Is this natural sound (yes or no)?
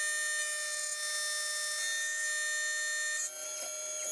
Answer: yes